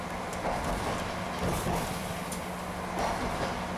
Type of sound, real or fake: real